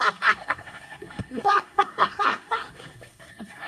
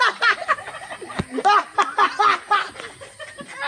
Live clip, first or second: second